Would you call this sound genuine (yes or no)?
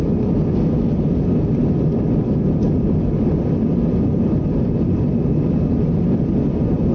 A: yes